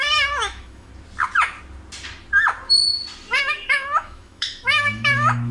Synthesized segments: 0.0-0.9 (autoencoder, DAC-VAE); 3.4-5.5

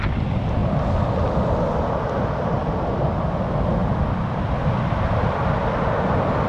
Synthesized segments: 3.8-5.5 (vocoder, BigVGAN v2)

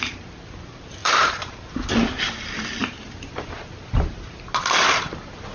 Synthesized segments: 1.0-1.7 (vocoder, BigVGAN v2); 2.8-3.5

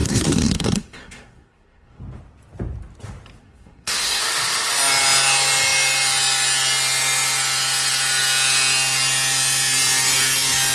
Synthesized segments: 0.0-2.0 (codec, SNAC); 3.4-4.2

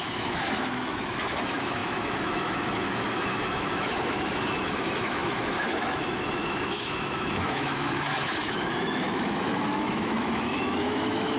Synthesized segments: 0.0-11.4 (autoencoder, DAC-VAE)